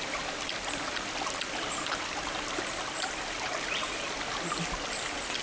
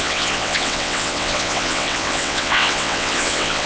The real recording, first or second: first